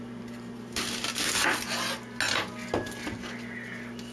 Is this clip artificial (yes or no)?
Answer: no